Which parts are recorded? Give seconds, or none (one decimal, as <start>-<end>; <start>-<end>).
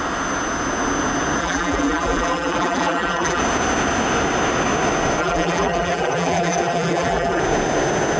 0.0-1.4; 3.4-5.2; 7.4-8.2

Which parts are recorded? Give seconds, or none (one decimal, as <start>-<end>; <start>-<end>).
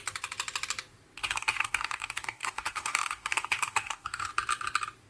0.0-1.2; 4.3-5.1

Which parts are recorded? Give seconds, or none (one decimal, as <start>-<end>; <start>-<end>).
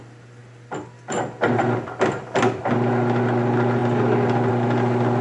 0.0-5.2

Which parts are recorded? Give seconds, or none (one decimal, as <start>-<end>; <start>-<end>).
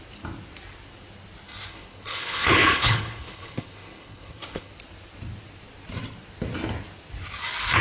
0.0-1.7; 4.7-7.8